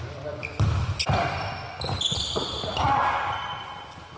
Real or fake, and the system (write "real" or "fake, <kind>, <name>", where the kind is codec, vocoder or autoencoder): real